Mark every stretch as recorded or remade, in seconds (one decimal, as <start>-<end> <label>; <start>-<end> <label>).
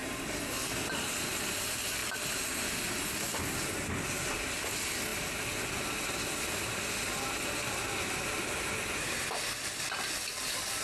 0.0-10.8 recorded